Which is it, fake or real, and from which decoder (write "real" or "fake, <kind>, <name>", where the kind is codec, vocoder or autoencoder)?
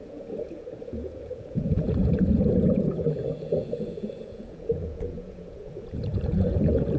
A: fake, vocoder, Vocos